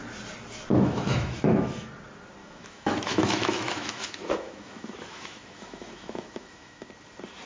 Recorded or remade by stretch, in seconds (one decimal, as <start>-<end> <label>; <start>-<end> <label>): 0.0-0.7 recorded; 0.7-1.9 remade; 1.9-2.4 recorded; 2.4-6.9 remade; 6.9-7.5 recorded